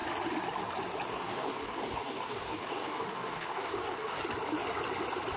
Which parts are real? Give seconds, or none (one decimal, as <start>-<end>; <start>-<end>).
0.0-1.1; 4.2-5.4